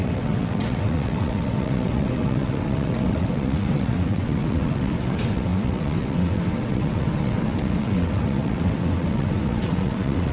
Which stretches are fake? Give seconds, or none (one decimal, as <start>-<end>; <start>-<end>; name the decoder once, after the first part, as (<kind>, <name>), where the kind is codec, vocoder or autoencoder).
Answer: 0.0-10.3 (vocoder, WaveNeXt)